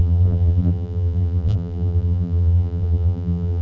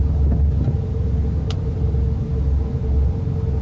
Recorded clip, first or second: second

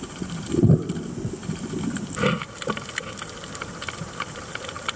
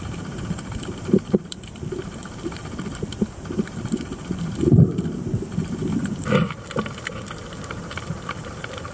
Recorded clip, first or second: first